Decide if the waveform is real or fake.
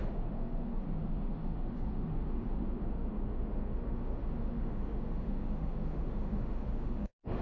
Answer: fake